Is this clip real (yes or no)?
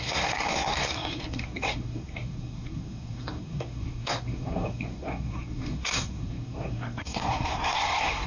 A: no